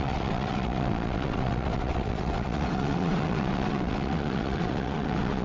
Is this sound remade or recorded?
remade